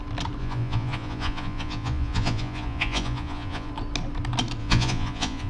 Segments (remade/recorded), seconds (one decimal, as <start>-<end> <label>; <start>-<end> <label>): 0.0-0.4 recorded; 0.4-3.7 remade; 3.7-4.6 recorded; 4.6-5.5 remade